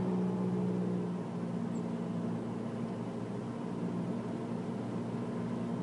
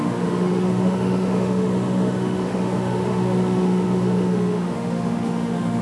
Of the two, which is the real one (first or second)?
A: first